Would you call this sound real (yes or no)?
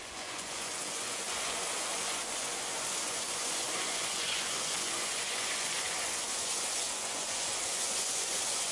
no